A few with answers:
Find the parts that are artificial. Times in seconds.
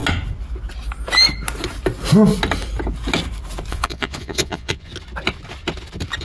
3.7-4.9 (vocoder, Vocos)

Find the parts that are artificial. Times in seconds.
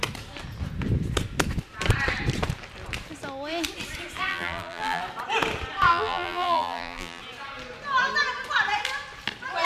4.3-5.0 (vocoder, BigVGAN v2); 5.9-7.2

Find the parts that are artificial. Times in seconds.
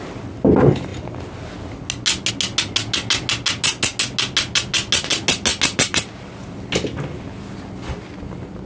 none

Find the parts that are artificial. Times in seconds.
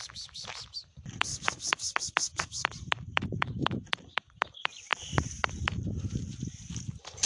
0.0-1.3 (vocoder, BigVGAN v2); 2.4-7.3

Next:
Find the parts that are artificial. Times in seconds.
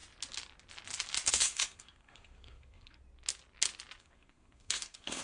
1.3-3.0 (codec, SNAC); 4.0-5.2